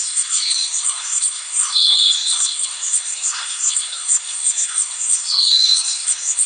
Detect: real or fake fake